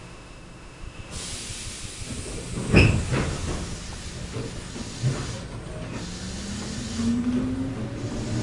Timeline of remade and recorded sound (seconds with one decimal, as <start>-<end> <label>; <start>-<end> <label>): 0.0-1.1 remade; 1.1-8.4 recorded